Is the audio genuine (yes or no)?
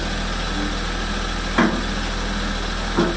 yes